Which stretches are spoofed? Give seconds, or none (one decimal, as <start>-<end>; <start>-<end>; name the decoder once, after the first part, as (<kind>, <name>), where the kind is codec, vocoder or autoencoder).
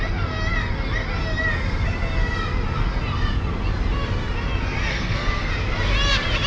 4.9-5.5 (codec, SNAC)